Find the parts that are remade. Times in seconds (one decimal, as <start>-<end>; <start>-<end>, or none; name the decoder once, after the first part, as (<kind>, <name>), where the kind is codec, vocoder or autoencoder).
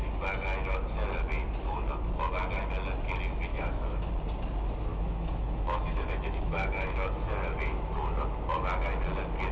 3.5-4.1 (autoencoder, DAC-VAE); 4.9-7.3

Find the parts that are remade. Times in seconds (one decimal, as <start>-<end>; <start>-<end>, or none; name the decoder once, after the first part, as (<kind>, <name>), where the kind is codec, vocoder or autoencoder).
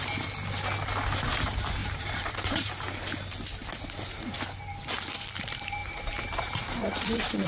1.8-2.7 (vocoder, BigVGAN v2); 5.8-7.5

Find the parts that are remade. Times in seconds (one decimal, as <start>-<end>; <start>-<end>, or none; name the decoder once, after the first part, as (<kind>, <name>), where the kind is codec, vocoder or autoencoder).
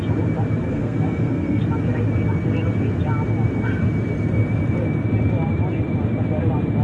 0.7-1.6 (codec, SNAC)